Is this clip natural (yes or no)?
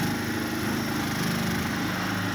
yes